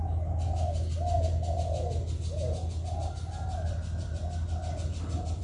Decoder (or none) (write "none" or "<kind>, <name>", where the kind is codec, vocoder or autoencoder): none